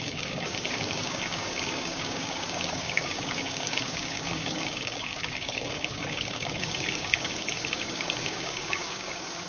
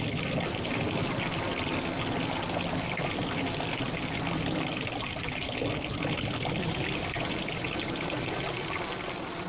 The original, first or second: second